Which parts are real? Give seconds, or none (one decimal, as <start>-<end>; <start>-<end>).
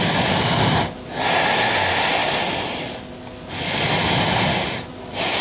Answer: 0.0-5.4